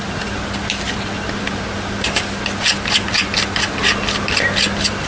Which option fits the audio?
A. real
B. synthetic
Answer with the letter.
A